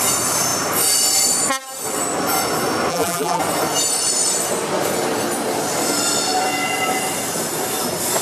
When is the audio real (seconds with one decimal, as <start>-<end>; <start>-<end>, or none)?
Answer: 0.0-2.9; 3.4-8.2